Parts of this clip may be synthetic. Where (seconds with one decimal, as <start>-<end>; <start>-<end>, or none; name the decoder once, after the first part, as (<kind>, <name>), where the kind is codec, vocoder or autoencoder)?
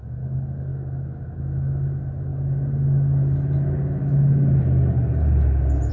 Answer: none